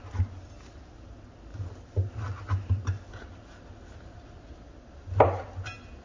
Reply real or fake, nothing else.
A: real